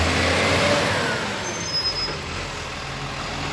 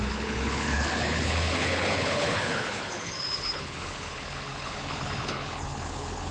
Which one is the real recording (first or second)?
first